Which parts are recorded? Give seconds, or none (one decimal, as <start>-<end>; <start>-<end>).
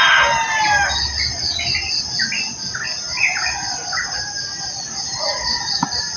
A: 0.0-6.2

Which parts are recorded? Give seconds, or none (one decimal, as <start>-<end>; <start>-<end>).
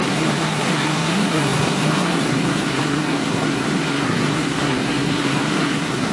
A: none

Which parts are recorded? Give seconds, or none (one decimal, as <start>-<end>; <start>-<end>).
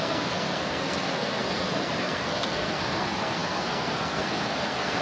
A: none